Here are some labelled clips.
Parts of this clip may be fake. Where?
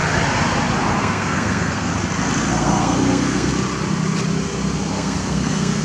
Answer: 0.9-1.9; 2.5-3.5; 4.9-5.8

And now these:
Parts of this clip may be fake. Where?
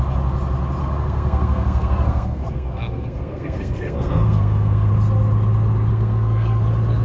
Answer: 0.8-4.9; 5.9-6.6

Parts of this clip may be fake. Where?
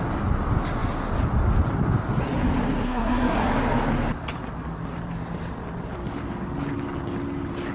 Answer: 2.8-3.5